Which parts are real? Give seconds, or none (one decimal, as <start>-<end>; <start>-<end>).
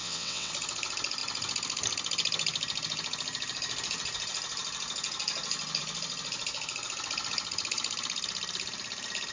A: 0.5-9.3